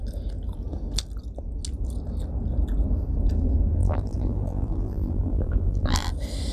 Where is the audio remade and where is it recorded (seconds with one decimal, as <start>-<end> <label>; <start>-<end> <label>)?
0.0-3.8 recorded; 3.8-6.1 remade; 6.1-6.5 recorded